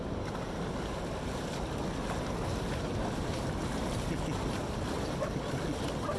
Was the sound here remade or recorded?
recorded